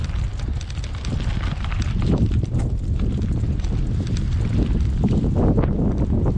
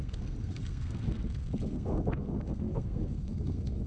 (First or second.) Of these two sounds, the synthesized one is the second